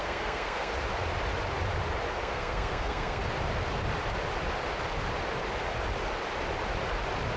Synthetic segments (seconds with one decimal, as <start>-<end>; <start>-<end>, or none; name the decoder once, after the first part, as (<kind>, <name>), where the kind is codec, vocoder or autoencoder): 0.0-0.7 (codec, SNAC); 2.2-3.2